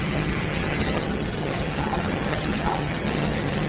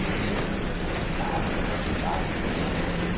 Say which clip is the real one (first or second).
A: second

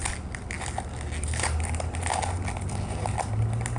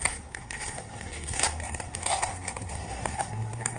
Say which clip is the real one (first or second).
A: first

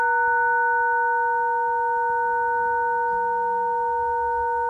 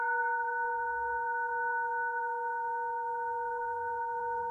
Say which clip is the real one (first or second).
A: first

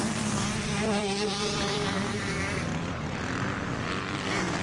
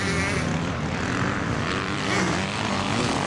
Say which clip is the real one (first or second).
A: second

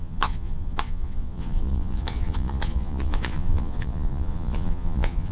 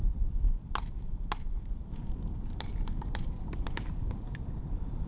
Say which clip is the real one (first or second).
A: second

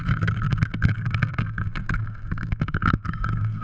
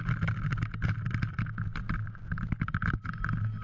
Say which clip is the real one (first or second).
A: second